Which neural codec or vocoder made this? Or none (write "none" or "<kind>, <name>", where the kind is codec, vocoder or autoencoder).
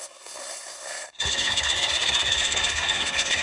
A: codec, SNAC